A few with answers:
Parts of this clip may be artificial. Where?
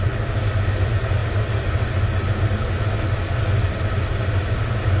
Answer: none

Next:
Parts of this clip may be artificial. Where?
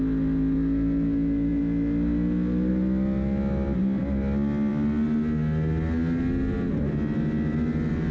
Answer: none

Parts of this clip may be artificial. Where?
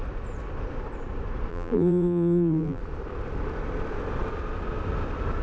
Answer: 1.5-2.8